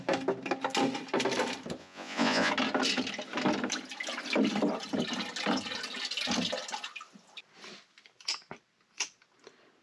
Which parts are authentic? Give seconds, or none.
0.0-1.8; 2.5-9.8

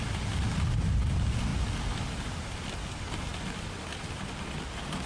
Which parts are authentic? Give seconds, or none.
0.0-5.1

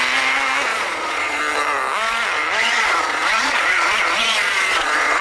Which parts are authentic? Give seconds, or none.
0.0-0.7; 1.4-2.6

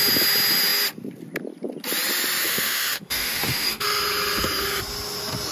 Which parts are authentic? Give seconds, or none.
0.0-2.4; 4.0-5.5

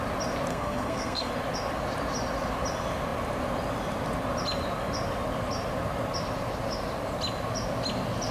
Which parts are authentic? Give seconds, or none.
0.0-0.5; 1.3-8.3